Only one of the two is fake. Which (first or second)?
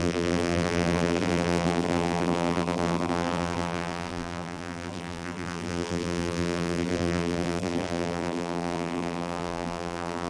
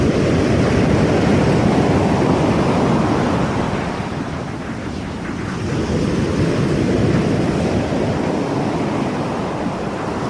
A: first